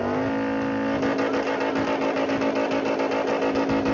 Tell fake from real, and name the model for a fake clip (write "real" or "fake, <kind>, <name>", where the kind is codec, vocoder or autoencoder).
real